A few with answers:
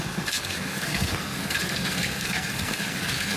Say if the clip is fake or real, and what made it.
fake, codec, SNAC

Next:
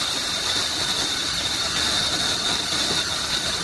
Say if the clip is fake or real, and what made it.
real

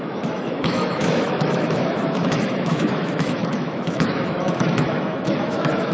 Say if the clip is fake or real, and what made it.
fake, autoencoder, DAC-VAE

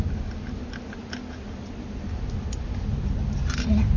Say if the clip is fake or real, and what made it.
real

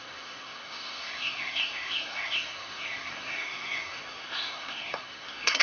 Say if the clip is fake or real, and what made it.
fake, codec, SNAC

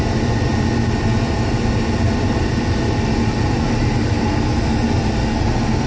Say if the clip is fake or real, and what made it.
real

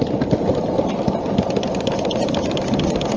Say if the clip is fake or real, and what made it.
real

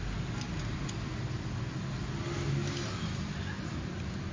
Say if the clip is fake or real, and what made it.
real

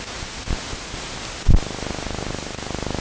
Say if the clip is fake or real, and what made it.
real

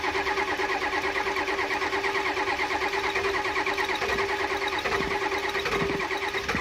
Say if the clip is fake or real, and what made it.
real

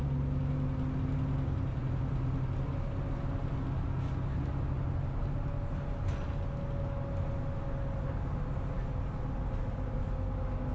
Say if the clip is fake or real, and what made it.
real